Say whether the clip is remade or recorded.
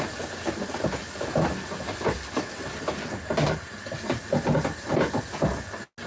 recorded